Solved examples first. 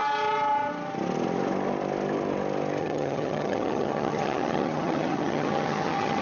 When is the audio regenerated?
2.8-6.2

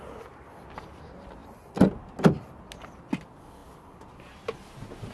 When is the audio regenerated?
none

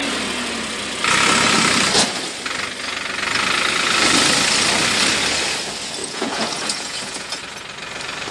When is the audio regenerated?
6.0-7.4